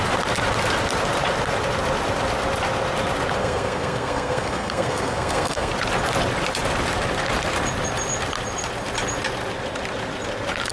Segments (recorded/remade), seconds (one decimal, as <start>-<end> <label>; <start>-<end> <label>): 0.0-3.4 recorded; 3.4-5.7 remade; 5.7-10.7 recorded